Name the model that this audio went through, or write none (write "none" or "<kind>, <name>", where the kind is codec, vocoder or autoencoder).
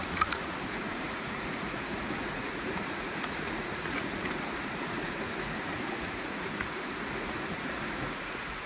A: vocoder, Vocos